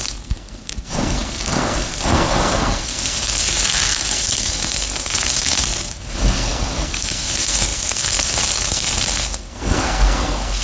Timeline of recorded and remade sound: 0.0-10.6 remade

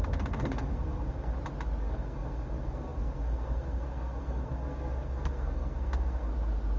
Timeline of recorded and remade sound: 0.0-1.3 remade; 1.3-1.8 recorded; 1.8-6.3 remade; 6.3-6.8 recorded

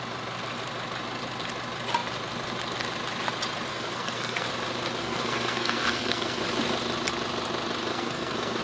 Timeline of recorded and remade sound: 0.0-3.7 recorded; 3.7-4.5 remade; 4.5-5.0 recorded; 5.0-6.4 remade; 6.4-7.9 recorded; 7.9-8.6 remade

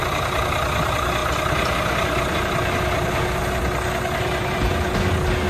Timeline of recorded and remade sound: 0.0-5.5 recorded

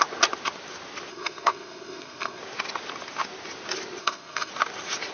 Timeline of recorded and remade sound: 0.0-1.1 recorded; 1.1-2.4 remade; 2.4-4.0 recorded; 4.0-4.5 remade; 4.5-5.1 recorded

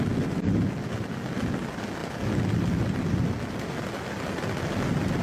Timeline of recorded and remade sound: 0.0-5.2 recorded